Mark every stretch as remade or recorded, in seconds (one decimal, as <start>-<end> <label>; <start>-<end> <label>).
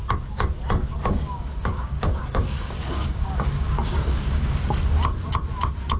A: 0.0-1.0 recorded; 1.0-4.6 remade; 4.6-6.0 recorded